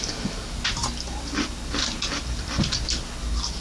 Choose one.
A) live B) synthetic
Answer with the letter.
A